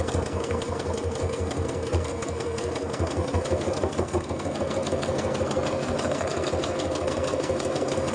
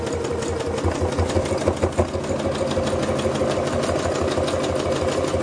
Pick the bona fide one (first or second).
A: second